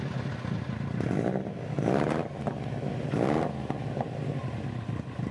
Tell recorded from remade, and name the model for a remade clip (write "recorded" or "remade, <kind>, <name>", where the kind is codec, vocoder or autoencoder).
recorded